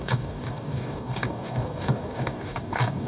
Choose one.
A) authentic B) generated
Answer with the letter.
B